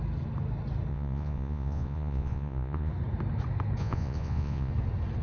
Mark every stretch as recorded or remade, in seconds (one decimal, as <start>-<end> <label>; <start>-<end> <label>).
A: 0.0-0.9 recorded; 0.9-2.9 remade; 2.9-3.8 recorded; 3.8-4.7 remade; 4.7-5.2 recorded